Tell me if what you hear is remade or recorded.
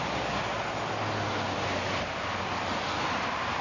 recorded